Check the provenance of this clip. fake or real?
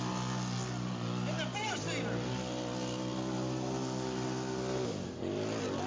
real